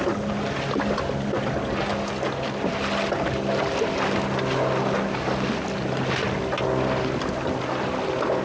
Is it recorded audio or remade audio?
recorded